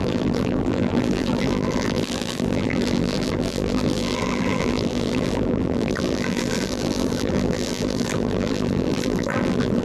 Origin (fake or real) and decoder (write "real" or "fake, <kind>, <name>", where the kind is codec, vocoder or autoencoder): fake, vocoder, BigVGAN v2